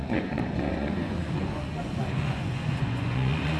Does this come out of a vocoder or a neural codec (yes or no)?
yes